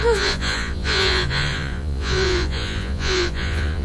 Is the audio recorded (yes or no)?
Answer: no